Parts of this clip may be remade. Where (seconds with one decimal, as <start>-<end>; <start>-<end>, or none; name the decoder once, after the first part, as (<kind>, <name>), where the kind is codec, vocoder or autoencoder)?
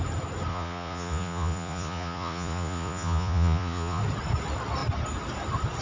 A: 0.5-4.0 (vocoder, Vocos)